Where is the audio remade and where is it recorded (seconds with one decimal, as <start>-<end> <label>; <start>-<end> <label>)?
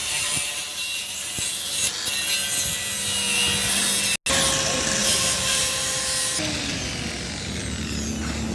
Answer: 0.0-1.9 remade; 1.9-5.0 recorded; 5.0-6.0 remade; 6.0-8.5 recorded